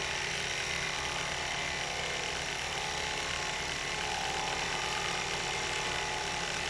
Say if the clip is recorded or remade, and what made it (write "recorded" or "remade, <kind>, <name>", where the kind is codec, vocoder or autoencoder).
recorded